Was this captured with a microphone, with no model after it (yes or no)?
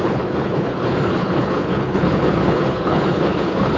no